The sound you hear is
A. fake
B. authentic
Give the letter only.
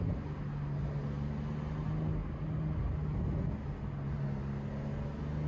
B